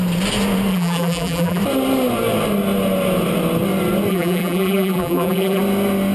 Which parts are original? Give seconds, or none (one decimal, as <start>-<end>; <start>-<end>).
0.0-0.7; 1.6-4.1; 5.6-6.1